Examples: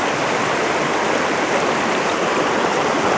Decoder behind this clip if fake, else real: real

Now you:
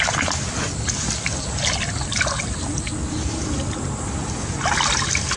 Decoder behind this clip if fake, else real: real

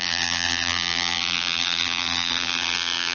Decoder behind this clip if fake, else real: fake, vocoder, BigVGAN v2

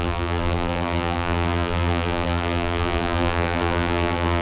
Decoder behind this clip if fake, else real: fake, vocoder, BigVGAN v2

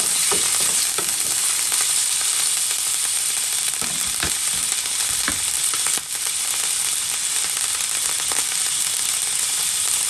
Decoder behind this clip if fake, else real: real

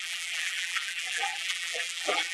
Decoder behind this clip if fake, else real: fake, vocoder, BigVGAN v2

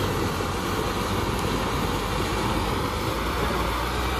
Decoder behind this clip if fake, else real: real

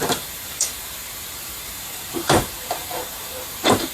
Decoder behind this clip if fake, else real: fake, vocoder, BigVGAN v2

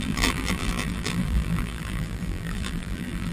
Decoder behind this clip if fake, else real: fake, vocoder, BigVGAN v2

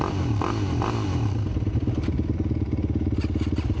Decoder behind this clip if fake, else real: real